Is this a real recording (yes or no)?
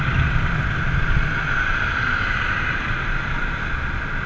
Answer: yes